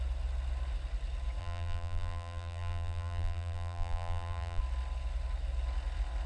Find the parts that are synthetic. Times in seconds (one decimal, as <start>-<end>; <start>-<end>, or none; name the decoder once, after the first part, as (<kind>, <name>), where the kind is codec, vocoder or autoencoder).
1.4-4.6 (vocoder, BigVGAN v2)

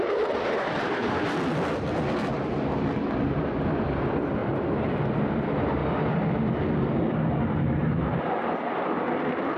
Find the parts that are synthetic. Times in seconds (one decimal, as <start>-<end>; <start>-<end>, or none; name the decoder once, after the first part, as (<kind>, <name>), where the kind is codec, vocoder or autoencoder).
0.0-5.8 (vocoder, BigVGAN v2); 8.2-9.6

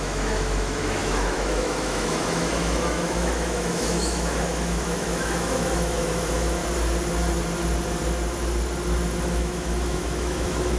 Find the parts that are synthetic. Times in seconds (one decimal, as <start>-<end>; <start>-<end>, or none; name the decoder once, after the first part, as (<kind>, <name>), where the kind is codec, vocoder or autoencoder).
0.0-6.6 (autoencoder, DAC-VAE); 9.2-10.8

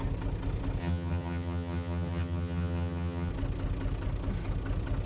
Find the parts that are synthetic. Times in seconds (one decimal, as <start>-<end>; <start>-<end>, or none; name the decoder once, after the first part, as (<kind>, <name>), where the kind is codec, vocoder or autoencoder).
0.8-3.3 (vocoder, HiFi-GAN)

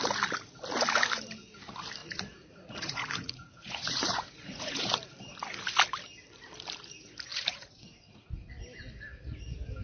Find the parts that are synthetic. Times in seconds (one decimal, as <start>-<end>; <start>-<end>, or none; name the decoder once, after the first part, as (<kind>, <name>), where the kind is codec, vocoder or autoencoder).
2.0-4.9 (vocoder, Vocos); 7.3-8.5

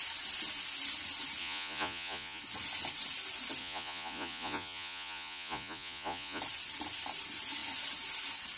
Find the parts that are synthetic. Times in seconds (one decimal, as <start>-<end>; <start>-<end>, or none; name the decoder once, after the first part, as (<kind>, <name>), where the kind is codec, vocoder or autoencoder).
1.4-2.4 (vocoder, Vocos); 3.6-6.4